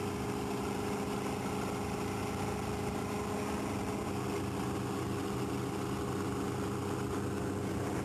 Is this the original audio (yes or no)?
yes